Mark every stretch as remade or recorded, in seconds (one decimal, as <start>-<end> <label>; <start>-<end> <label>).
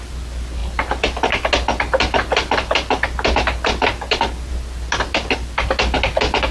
0.0-6.5 recorded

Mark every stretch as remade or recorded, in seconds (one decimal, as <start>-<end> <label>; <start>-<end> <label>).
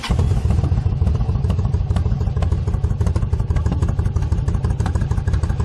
0.0-5.6 recorded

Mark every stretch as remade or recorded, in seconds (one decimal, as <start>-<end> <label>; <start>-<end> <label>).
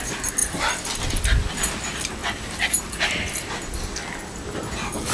0.0-0.4 recorded; 0.4-1.5 remade; 1.5-2.2 recorded; 2.2-3.5 remade; 3.5-5.1 recorded